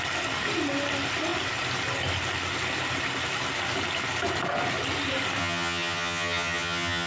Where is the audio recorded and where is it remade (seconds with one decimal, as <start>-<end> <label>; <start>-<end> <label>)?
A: 0.0-5.4 recorded; 5.4-7.1 remade